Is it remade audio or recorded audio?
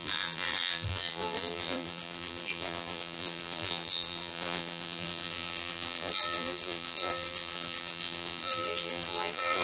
remade